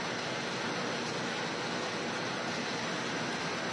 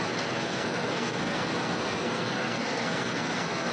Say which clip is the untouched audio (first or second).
first